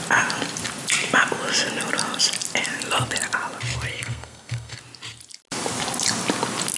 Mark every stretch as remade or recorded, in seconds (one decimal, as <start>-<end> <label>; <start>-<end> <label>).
0.0-3.9 recorded; 3.9-4.8 remade; 4.8-6.8 recorded